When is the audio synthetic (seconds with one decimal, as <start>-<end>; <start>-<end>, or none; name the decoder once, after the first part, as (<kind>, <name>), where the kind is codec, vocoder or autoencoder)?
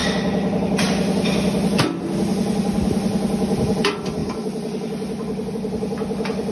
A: none